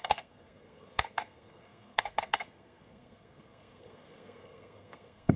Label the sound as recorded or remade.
remade